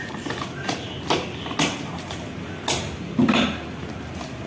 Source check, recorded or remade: recorded